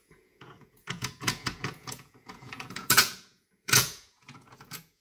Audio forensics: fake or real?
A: fake